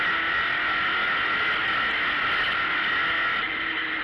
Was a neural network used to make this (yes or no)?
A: no